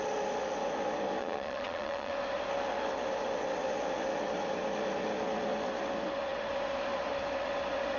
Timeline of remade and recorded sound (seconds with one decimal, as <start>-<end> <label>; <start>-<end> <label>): 0.0-1.2 recorded; 1.2-2.1 remade; 2.1-8.0 recorded